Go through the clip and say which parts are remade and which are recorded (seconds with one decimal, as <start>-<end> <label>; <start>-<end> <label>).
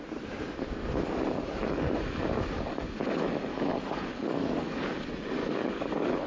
0.0-1.6 recorded; 1.6-2.2 remade; 2.2-3.7 recorded; 3.7-4.9 remade; 4.9-5.4 recorded; 5.4-6.3 remade